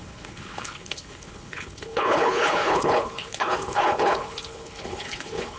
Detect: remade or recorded remade